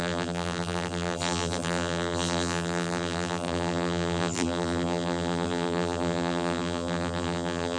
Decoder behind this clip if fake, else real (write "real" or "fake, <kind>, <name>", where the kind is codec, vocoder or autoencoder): fake, vocoder, BigVGAN v2